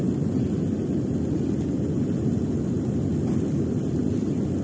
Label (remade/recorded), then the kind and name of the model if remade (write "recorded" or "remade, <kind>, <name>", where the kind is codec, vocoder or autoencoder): recorded